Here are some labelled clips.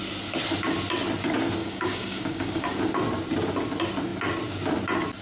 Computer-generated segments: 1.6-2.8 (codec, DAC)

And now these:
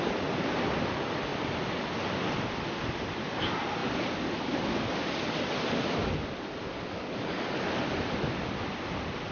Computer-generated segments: none

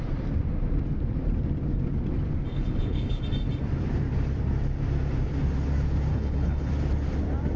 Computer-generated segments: 2.5-3.2 (codec, HILCodec); 6.1-6.7

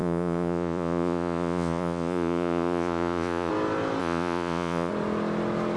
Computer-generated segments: 0.0-3.5 (vocoder, Vocos); 4.0-4.9

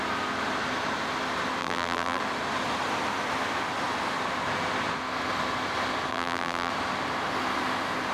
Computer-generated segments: 1.6-2.2 (vocoder, BigVGAN v2); 6.1-6.7

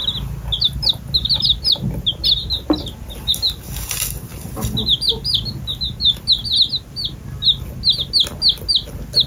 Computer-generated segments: none

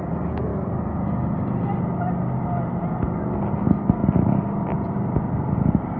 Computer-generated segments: none